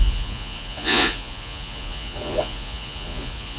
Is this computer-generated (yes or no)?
yes